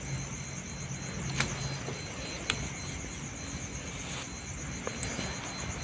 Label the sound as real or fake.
real